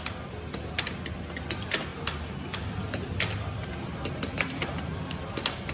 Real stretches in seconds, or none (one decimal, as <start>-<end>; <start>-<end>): 0.0-5.7